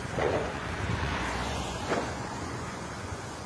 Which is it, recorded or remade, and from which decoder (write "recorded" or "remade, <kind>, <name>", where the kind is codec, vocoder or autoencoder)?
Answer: remade, vocoder, Vocos